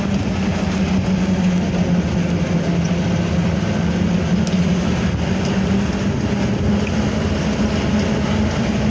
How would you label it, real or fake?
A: real